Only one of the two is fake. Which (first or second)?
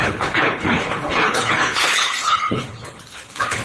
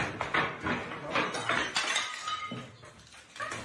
first